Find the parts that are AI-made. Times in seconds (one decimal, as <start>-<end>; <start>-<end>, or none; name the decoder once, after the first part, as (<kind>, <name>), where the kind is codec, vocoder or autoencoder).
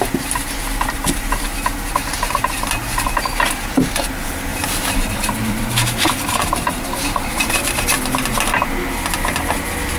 4.5-7.7 (vocoder, BigVGAN v2)